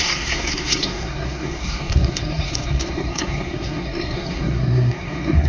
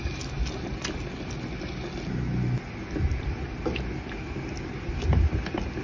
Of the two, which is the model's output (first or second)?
first